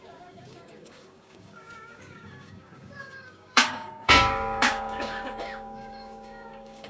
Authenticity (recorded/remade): remade